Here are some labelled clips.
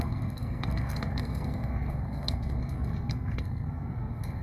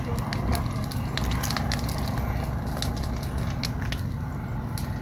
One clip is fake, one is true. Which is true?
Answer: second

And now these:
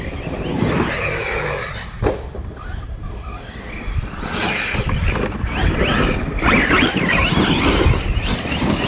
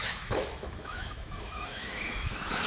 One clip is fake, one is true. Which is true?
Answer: first